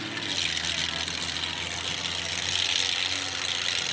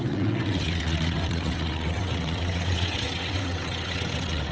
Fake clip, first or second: second